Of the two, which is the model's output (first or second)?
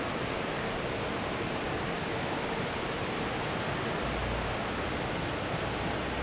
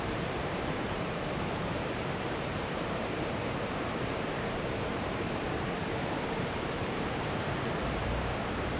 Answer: second